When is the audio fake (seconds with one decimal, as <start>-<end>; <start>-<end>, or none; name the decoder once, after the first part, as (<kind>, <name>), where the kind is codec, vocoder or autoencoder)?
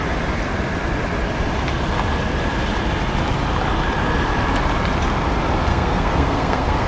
5.7-6.9 (codec, SNAC)